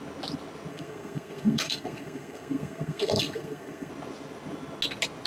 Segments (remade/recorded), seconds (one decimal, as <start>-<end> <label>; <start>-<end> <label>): 0.0-0.7 recorded; 0.7-3.9 remade; 3.9-5.3 recorded